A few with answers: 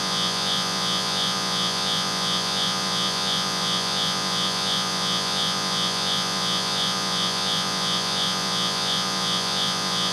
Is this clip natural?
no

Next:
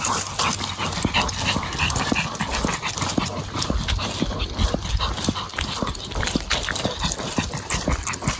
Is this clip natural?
yes